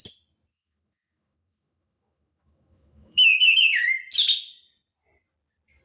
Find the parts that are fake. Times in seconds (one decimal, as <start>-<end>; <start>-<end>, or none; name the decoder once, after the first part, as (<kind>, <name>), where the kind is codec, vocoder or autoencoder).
0.5-4.0 (autoencoder, DAC-VAE)